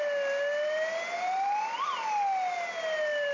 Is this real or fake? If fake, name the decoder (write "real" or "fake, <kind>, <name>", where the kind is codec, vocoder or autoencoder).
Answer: real